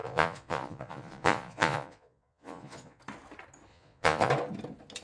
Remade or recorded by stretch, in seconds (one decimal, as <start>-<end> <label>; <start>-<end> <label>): 0.0-3.0 remade; 3.0-3.7 recorded; 3.7-4.3 remade; 4.3-5.0 recorded